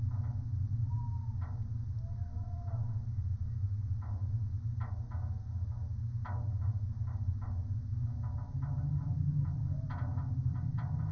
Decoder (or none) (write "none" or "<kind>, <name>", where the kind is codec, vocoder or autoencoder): none